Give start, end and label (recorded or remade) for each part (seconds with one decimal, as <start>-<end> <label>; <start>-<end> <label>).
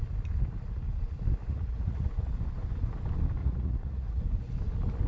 0.0-1.4 recorded; 1.4-2.3 remade; 2.3-3.4 recorded; 3.4-4.2 remade; 4.2-5.1 recorded